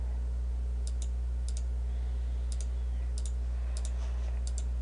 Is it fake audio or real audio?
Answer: real